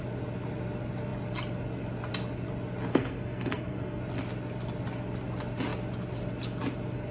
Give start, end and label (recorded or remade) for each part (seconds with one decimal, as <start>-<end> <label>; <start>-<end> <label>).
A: 0.0-2.9 recorded; 2.9-4.0 remade; 4.0-7.1 recorded

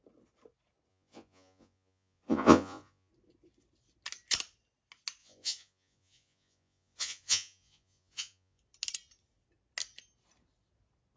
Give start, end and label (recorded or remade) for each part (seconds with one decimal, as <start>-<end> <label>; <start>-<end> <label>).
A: 0.0-0.9 recorded; 0.9-3.1 remade; 3.1-5.2 recorded; 5.2-8.6 remade; 8.6-11.2 recorded

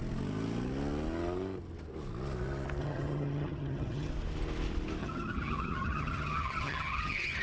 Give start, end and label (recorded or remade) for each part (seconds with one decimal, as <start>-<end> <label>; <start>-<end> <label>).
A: 0.0-2.8 recorded; 2.8-4.1 remade; 4.1-5.0 recorded; 5.0-7.4 remade

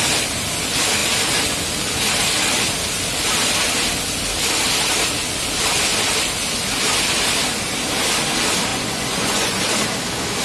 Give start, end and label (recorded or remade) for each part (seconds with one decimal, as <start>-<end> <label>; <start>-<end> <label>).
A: 0.0-8.7 recorded; 8.7-9.6 remade; 9.6-10.4 recorded

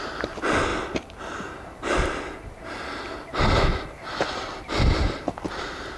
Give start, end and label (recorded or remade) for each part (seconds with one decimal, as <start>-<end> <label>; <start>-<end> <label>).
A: 0.0-6.0 recorded